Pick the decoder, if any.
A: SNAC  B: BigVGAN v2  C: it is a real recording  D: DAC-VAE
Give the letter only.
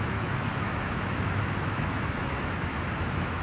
D